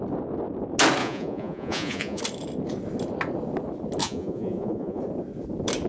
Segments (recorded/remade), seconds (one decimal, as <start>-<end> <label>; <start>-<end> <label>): 0.0-1.0 recorded; 1.0-2.2 remade; 2.2-4.0 recorded; 4.0-5.0 remade; 5.0-5.9 recorded